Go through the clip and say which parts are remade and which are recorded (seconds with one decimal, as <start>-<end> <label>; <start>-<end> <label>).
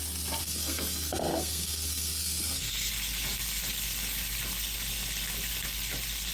0.0-0.4 recorded; 0.4-2.9 remade; 2.9-6.3 recorded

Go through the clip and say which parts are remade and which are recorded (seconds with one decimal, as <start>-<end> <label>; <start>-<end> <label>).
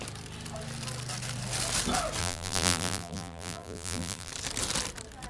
0.0-2.2 recorded; 2.2-4.3 remade; 4.3-5.3 recorded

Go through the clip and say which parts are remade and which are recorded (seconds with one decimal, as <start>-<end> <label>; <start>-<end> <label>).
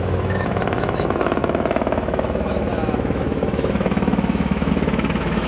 0.0-5.5 remade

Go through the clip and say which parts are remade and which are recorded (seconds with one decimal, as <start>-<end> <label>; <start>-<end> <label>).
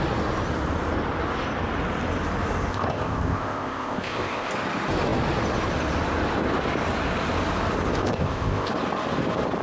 0.0-2.7 recorded; 2.7-4.5 remade; 4.5-8.0 recorded; 8.0-8.7 remade; 8.7-9.6 recorded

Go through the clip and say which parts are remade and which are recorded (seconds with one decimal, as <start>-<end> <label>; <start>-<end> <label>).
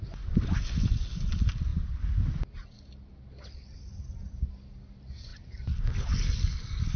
0.0-7.0 recorded